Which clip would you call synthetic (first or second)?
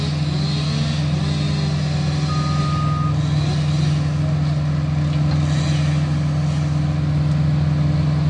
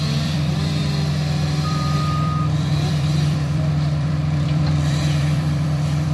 second